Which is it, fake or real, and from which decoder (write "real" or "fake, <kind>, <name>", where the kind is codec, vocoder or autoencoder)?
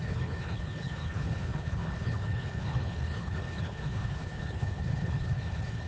fake, codec, HILCodec